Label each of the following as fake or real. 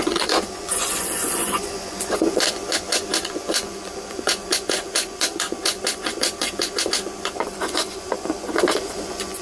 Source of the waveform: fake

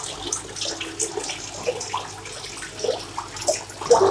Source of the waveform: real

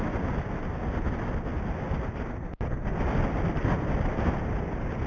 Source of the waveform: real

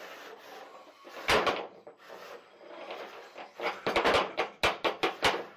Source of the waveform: real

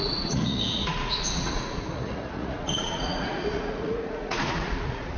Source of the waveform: fake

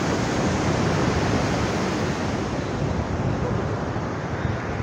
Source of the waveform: real